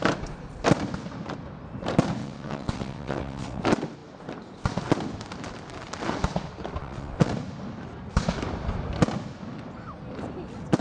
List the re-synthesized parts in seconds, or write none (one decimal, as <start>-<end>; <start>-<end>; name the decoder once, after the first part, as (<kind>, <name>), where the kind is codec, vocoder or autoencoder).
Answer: 2.2-3.6 (vocoder, WaveNeXt); 6.8-7.3